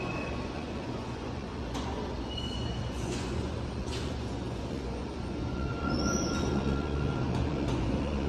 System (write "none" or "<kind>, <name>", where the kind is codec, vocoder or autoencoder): vocoder, Vocos